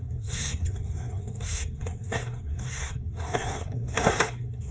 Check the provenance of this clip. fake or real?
fake